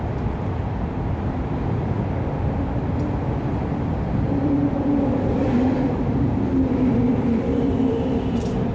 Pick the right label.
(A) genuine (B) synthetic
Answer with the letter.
B